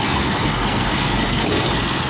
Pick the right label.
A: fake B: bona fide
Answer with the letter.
A